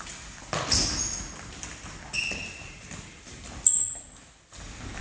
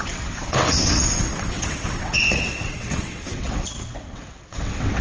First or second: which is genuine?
first